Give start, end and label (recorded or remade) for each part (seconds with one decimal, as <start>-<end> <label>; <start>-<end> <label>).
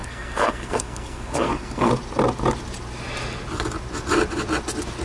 0.0-1.9 remade; 1.9-5.0 recorded